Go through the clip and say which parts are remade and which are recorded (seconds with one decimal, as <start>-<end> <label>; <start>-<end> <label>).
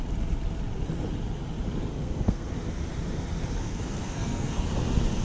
0.0-1.9 recorded; 1.9-2.5 remade; 2.5-3.6 recorded; 3.6-4.6 remade; 4.6-5.2 recorded